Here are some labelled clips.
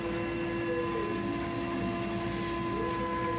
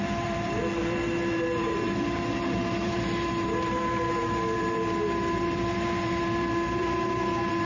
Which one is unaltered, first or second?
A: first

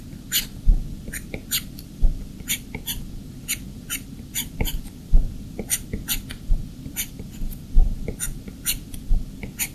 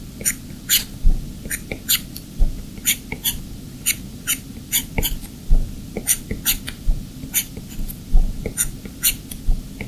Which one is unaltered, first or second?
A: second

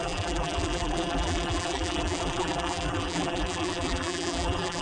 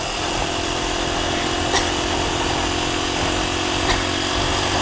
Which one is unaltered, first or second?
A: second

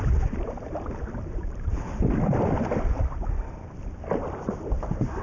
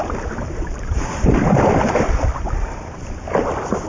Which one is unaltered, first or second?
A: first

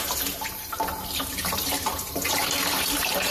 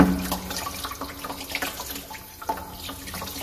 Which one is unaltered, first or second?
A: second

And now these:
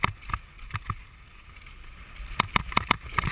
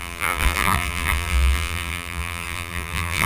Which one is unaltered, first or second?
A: first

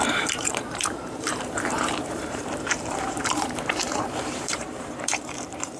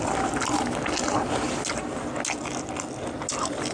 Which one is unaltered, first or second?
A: second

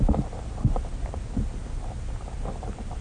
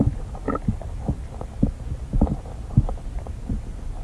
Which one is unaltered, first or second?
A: first